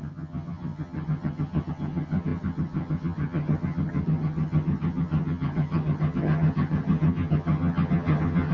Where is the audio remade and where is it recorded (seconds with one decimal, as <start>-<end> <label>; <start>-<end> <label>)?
0.0-8.5 remade